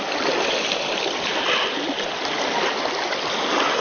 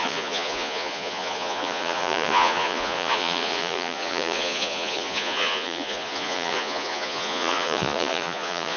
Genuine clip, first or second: first